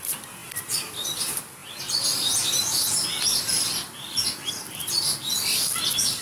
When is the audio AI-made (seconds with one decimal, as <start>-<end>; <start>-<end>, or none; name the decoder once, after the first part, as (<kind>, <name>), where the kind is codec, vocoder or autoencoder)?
0.4-1.2 (vocoder, BigVGAN v2)